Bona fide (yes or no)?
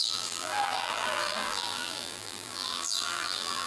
no